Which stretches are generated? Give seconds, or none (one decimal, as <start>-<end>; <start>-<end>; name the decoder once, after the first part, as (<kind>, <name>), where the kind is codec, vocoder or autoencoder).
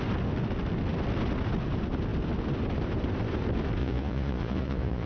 3.8-5.1 (vocoder, Vocos)